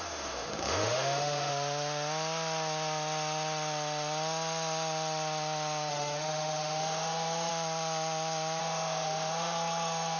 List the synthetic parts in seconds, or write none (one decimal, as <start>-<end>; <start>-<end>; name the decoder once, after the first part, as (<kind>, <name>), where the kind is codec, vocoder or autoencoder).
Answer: 0.0-1.5 (autoencoder, DAC-VAE); 5.9-7.5; 8.6-10.2